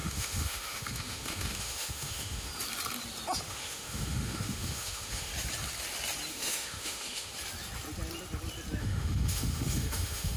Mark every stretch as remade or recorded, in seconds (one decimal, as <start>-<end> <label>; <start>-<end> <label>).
0.0-2.5 remade; 2.5-3.5 recorded; 3.5-5.3 remade; 5.3-6.3 recorded; 6.3-7.3 remade; 7.3-8.8 recorded; 8.8-10.4 remade